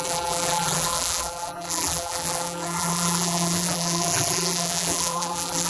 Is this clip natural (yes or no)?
no